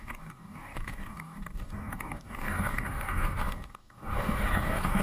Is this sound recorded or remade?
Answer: remade